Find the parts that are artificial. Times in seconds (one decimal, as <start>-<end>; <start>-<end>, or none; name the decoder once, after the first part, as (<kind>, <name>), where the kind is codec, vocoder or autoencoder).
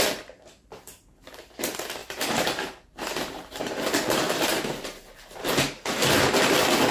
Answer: 2.0-3.6 (vocoder, BigVGAN v2)